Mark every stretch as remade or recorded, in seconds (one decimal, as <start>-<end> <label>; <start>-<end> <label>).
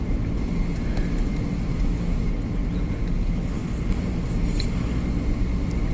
0.0-5.9 recorded